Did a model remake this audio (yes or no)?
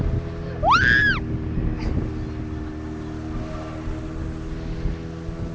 no